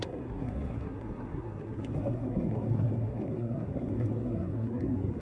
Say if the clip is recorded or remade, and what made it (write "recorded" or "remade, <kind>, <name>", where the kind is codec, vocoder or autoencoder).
remade, codec, SNAC